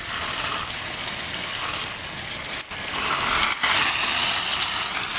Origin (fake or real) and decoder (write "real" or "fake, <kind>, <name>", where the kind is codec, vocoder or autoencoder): real